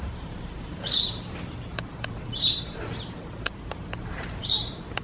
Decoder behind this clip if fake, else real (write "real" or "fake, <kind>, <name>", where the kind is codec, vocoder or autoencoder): fake, vocoder, BigVGAN v2